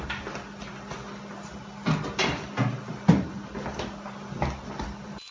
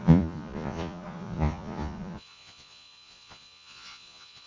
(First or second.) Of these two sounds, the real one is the first